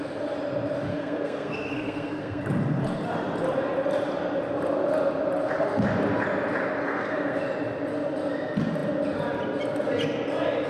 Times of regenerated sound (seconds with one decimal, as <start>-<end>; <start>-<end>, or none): 0.9-2.4; 6.9-7.4